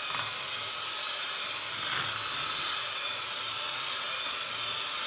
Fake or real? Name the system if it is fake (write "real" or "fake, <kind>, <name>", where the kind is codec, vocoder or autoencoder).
real